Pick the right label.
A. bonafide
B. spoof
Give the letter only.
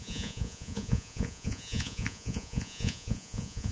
B